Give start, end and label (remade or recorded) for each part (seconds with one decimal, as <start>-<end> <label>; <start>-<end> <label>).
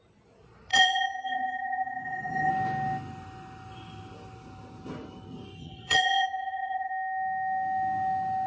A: 0.0-0.7 recorded; 0.7-2.5 remade; 2.5-5.6 recorded; 5.6-6.9 remade; 6.9-8.5 recorded